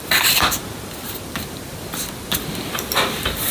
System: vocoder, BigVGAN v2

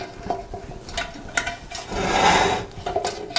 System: none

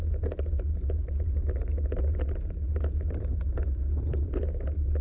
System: none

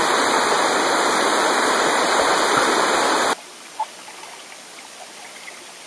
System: vocoder, BigVGAN v2